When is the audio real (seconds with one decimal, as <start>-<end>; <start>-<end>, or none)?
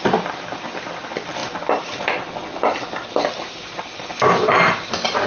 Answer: 0.0-5.3